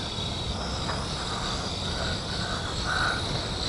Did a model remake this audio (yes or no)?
no